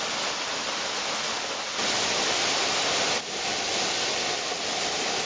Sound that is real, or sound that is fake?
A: real